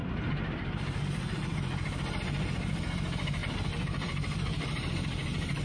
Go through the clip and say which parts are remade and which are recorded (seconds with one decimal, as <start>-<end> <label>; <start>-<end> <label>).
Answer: 0.0-5.6 recorded